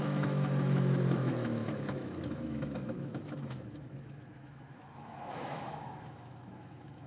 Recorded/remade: remade